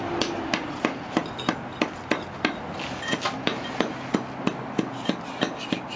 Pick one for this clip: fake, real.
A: real